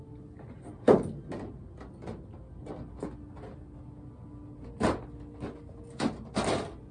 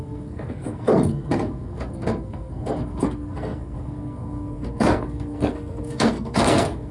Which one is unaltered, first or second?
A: first